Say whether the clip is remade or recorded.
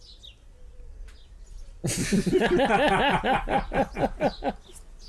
recorded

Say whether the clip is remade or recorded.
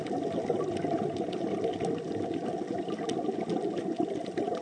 recorded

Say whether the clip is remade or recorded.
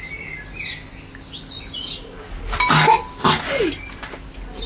recorded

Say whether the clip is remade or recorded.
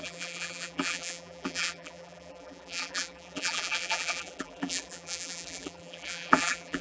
remade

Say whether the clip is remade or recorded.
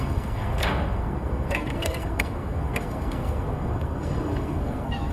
remade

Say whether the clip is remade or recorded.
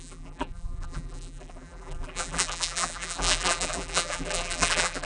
remade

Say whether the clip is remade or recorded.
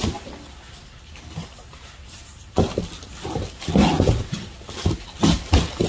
recorded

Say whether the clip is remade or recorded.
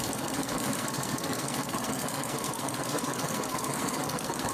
remade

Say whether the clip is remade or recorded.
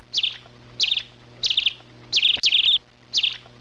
recorded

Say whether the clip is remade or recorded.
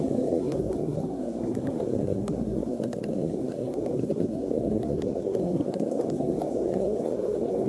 remade